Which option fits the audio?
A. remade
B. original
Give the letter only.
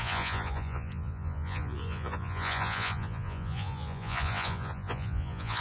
A